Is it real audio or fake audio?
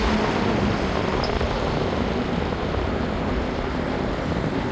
real